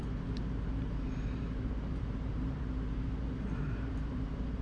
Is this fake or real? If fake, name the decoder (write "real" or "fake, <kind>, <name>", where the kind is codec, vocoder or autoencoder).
fake, vocoder, BigVGAN v2